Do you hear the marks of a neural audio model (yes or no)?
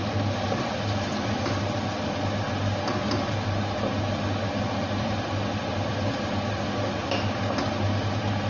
no